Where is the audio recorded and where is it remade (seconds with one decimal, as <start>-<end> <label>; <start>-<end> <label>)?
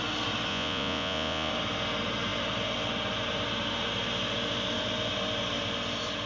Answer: 0.0-0.5 recorded; 0.5-1.5 remade; 1.5-6.3 recorded